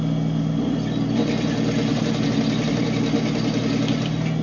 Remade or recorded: recorded